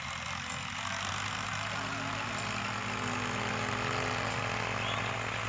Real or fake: real